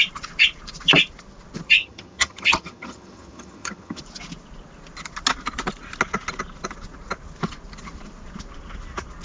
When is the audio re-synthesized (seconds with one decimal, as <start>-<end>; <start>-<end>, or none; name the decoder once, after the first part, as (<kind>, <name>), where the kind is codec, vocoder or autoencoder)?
1.8-4.0 (vocoder, HiFi-GAN)